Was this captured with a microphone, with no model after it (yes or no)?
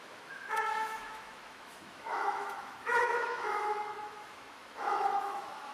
no